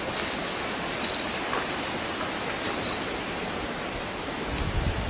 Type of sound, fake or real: real